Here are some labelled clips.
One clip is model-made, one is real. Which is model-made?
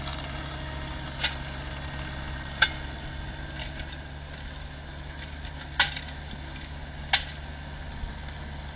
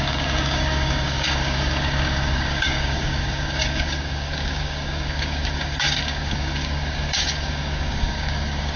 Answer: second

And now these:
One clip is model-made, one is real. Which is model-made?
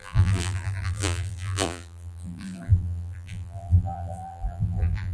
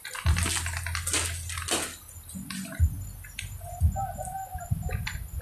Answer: first